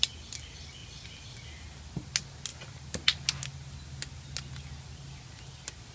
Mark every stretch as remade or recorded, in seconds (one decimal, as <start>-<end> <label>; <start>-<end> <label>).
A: 0.0-0.8 recorded; 0.8-1.8 remade; 1.8-5.9 recorded